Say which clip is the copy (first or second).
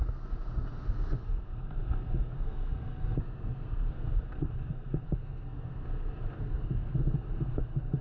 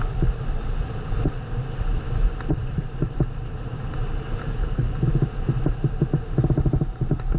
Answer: first